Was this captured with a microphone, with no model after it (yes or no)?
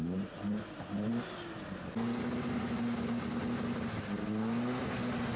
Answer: yes